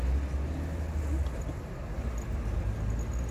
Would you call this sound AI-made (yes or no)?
no